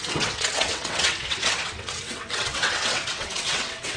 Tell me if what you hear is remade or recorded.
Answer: remade